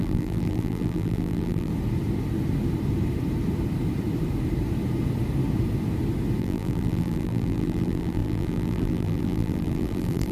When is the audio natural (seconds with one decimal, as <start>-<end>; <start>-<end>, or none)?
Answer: 1.7-6.4